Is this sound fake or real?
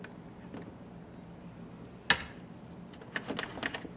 real